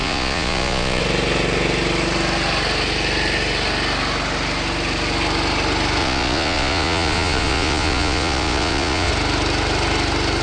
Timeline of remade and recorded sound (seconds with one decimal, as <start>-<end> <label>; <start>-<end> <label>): 0.0-1.0 remade; 1.0-6.0 recorded; 6.0-9.1 remade; 9.1-10.4 recorded